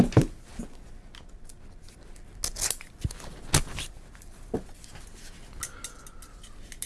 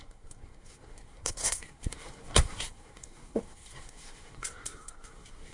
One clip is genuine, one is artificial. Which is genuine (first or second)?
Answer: first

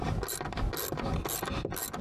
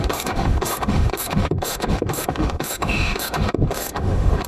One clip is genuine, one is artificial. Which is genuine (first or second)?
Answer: first